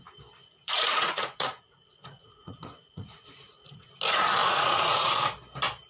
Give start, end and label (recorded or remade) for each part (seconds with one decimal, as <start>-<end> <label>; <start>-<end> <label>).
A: 0.0-0.4 recorded; 0.4-3.9 remade; 3.9-4.4 recorded; 4.4-5.1 remade; 5.1-5.9 recorded